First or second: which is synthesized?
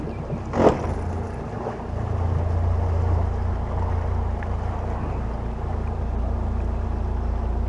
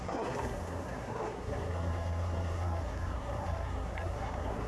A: second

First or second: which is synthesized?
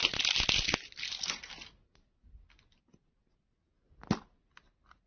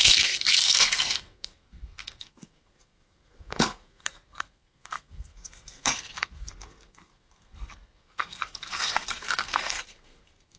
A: second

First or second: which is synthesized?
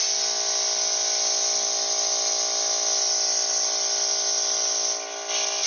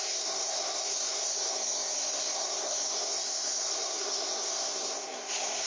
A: second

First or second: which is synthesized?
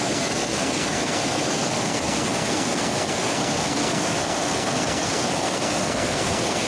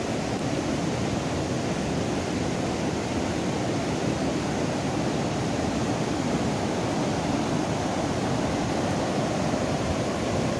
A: first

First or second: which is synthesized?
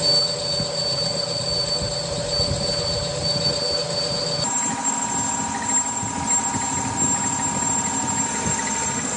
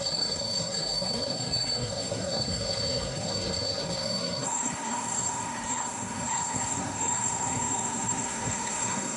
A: second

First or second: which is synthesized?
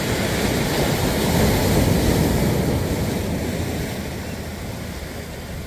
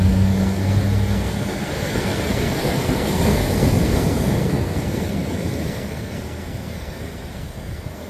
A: second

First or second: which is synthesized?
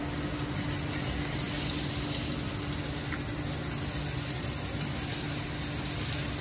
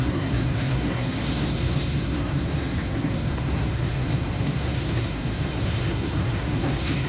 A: second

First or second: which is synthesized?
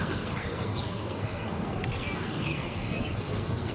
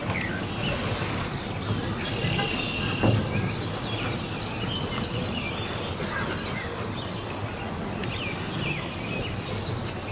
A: first